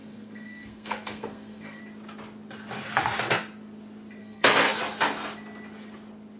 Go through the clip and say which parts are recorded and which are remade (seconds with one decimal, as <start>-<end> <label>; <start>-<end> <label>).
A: 0.0-1.8 remade; 1.8-4.2 recorded; 4.2-4.8 remade; 4.8-6.4 recorded